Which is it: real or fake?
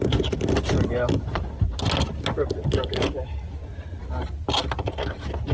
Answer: real